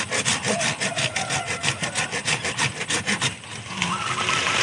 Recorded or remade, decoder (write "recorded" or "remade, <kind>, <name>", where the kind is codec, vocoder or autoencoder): recorded